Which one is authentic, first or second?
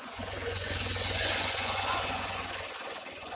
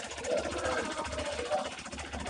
second